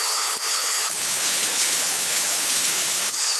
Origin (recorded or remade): remade